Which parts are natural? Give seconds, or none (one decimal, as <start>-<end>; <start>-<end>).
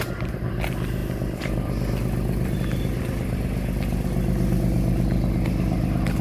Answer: 0.0-1.0; 2.6-6.2